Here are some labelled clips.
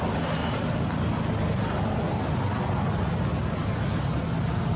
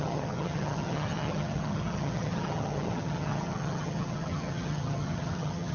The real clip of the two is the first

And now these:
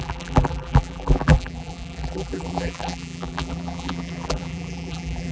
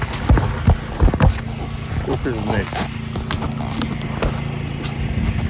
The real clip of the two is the second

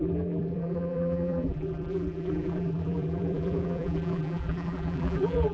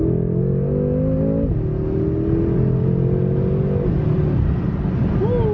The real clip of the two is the second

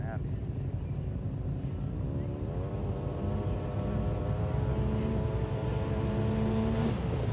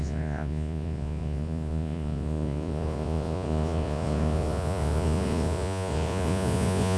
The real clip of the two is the first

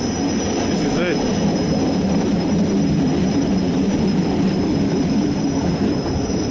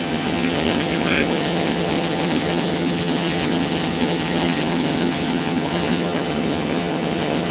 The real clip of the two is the first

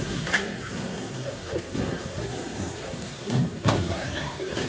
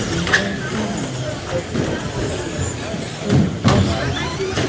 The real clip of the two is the second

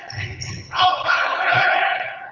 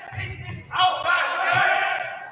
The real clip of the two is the second